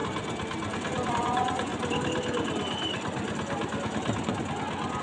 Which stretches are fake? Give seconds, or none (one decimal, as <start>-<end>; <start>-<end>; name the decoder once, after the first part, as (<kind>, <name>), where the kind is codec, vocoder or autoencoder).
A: 1.1-1.7 (vocoder, Vocos)